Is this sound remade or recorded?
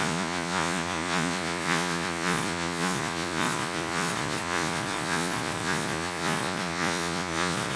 remade